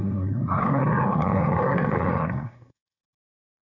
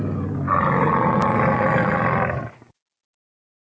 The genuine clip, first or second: second